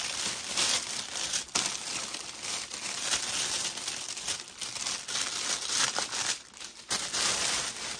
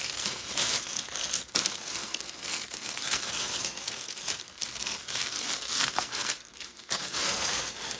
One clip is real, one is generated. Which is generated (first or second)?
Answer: second